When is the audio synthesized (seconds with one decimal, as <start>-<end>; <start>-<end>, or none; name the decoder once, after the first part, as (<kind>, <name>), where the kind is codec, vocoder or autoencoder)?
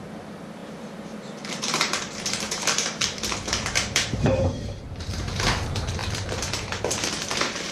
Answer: 0.0-7.7 (vocoder, BigVGAN v2)